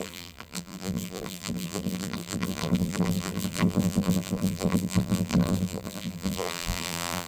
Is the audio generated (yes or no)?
yes